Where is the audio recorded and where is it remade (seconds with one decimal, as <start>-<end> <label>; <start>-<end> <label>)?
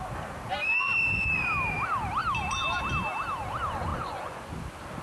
0.0-3.9 recorded; 3.9-4.5 remade; 4.5-5.0 recorded